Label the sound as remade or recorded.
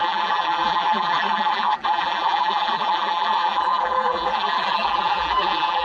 remade